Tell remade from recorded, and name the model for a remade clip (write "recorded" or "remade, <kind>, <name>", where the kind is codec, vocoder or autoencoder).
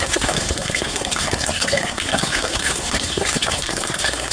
remade, codec, SNAC